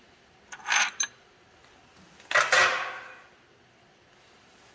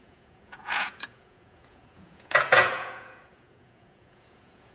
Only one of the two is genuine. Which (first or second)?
first